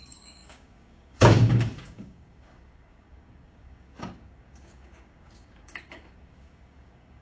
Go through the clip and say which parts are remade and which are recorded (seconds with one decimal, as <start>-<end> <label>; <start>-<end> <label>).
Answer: 0.0-7.2 remade

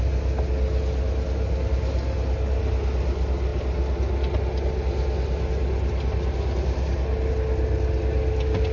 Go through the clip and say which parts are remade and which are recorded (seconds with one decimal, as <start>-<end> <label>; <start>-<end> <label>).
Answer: 0.0-8.7 recorded

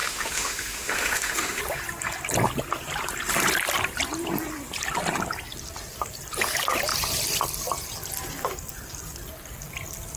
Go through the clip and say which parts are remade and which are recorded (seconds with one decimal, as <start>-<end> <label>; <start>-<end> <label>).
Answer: 0.0-1.6 remade; 1.6-10.2 recorded

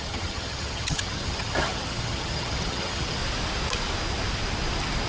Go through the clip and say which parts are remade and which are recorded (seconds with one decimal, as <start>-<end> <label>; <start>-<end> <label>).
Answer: 0.0-3.2 remade; 3.2-5.1 recorded